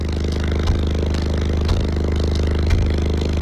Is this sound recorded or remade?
recorded